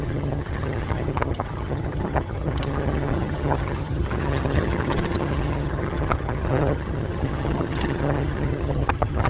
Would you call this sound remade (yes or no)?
yes